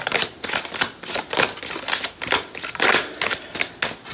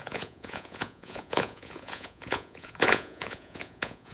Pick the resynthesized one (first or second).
second